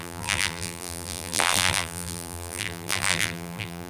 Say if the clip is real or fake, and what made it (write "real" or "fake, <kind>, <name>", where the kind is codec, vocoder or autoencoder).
fake, vocoder, BigVGAN v2